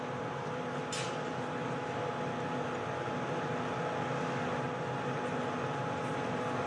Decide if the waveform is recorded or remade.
recorded